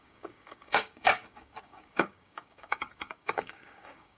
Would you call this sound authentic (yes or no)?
no